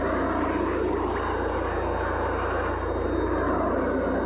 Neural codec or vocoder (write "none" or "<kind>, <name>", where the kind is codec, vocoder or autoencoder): none